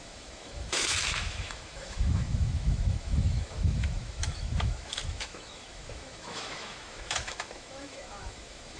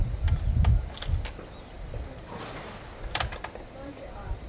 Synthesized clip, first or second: first